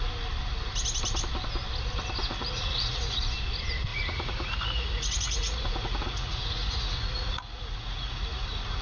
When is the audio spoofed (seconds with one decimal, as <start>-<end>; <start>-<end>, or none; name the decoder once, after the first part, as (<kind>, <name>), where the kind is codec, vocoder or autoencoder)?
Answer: 2.2-3.2 (vocoder, Vocos); 3.9-8.8